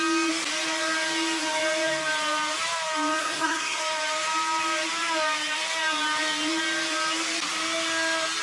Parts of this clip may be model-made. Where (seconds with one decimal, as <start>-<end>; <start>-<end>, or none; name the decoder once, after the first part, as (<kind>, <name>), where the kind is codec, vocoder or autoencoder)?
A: 3.2-3.8 (codec, SNAC)